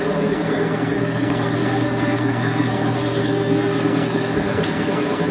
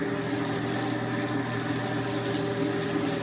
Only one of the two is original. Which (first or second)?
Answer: second